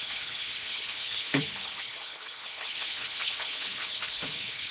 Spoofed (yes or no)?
yes